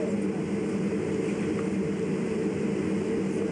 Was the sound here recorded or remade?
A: recorded